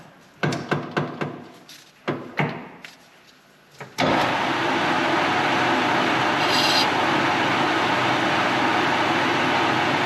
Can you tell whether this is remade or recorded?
recorded